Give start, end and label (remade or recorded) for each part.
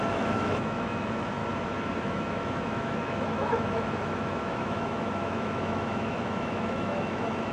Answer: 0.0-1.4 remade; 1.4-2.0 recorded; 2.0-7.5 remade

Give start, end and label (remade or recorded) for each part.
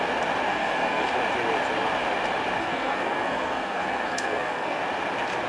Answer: 0.0-0.5 recorded; 0.5-1.1 remade; 1.1-2.6 recorded; 2.6-4.8 remade; 4.8-5.5 recorded